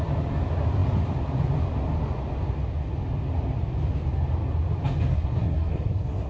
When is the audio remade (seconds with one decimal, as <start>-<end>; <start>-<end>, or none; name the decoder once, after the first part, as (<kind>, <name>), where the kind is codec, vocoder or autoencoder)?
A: 5.1-6.3 (codec, SNAC)